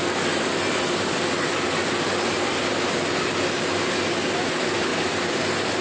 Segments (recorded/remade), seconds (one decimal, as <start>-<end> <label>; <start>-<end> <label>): 0.0-5.8 recorded